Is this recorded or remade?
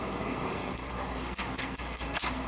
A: remade